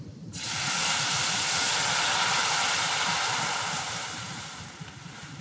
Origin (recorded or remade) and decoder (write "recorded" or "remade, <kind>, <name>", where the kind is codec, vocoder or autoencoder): recorded